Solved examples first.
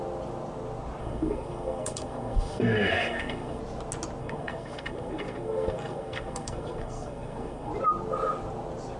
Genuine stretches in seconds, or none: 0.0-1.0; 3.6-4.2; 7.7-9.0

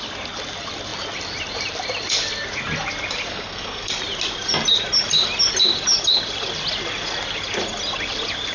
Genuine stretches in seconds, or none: 0.0-3.3; 3.9-8.5

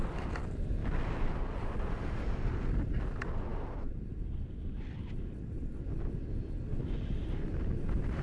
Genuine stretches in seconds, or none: 0.0-8.2